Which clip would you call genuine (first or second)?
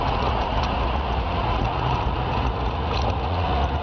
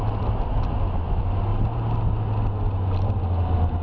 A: second